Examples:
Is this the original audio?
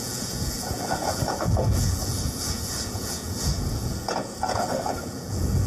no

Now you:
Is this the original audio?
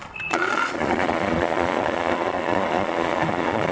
no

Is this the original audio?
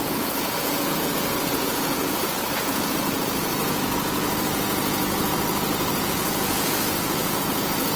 no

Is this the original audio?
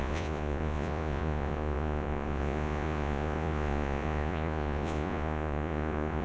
no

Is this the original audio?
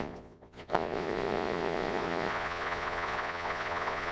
no